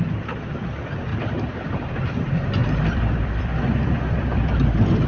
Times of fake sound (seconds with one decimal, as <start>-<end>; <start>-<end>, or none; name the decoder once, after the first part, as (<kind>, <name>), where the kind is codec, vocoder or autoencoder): 0.0-1.1 (vocoder, BigVGAN v2); 1.7-5.1